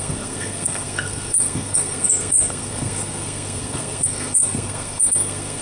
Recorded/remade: remade